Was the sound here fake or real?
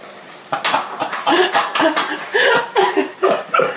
fake